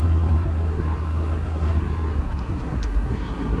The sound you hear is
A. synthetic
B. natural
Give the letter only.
A